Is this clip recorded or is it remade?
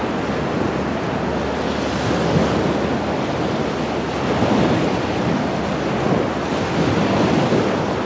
recorded